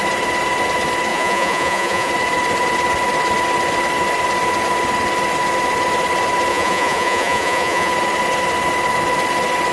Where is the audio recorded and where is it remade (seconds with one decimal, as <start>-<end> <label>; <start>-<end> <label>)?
0.0-1.1 recorded; 1.1-2.1 remade; 2.1-6.5 recorded; 6.5-7.9 remade; 7.9-9.7 recorded